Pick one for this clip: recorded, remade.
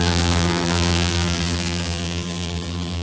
remade